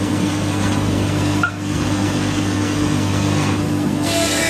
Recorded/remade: remade